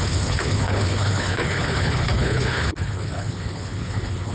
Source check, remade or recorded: remade